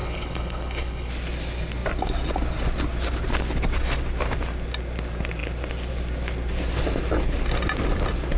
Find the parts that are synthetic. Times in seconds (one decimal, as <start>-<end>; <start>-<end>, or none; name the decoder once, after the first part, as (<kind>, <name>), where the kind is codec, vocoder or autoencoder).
0.0-1.1 (codec, HILCodec)